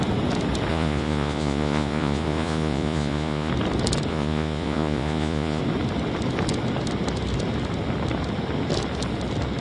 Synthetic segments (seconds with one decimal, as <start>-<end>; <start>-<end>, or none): 0.7-3.5; 4.1-5.6